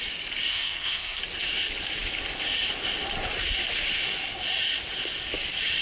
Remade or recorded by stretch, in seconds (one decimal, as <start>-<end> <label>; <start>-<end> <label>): 0.0-0.5 recorded; 0.5-1.2 remade; 1.2-5.8 recorded